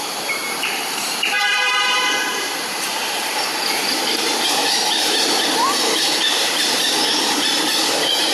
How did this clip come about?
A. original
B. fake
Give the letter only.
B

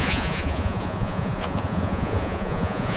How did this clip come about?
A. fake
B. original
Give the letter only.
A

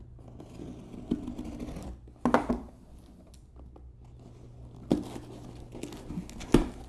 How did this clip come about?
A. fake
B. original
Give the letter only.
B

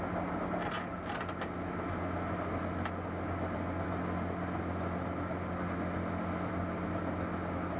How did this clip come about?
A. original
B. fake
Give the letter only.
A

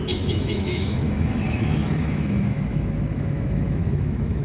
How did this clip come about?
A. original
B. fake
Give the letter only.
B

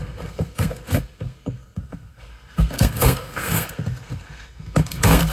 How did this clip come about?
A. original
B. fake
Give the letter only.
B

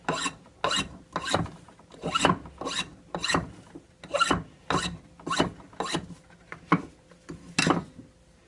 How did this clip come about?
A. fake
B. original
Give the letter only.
B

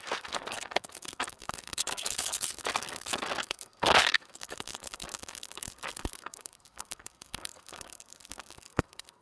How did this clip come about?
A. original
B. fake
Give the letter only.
B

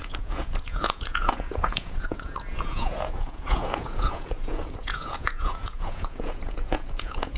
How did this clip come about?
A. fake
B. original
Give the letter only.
A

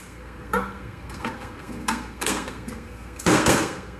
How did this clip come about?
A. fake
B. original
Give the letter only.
A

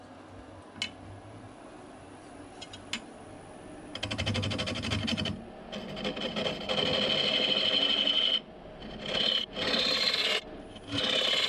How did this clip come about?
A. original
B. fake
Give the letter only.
A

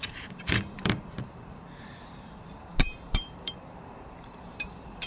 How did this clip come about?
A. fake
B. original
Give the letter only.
A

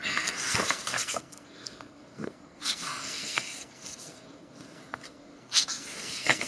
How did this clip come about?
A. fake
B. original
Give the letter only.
A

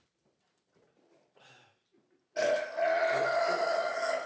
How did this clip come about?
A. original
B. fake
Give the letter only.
A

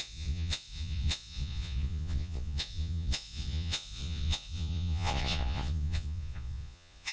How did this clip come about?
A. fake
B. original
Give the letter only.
A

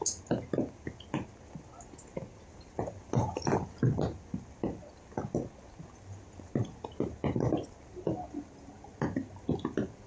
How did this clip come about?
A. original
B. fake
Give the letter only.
A